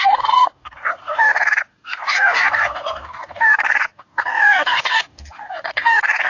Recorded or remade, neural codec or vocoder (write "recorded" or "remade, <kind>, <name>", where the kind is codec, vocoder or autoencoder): remade, codec, DAC